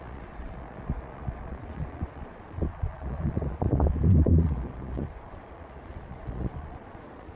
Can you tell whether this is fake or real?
fake